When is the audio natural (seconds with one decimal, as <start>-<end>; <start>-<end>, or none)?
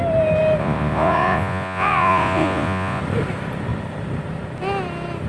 0.0-0.6; 3.0-5.3